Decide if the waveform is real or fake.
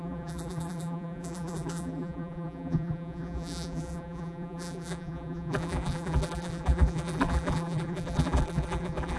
fake